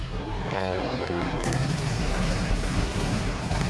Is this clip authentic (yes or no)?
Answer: no